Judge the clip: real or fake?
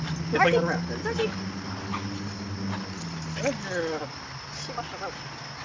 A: real